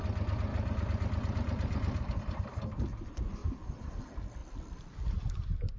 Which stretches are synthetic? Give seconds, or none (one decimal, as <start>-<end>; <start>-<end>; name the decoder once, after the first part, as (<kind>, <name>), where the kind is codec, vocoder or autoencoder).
3.4-4.0 (vocoder, BigVGAN v2)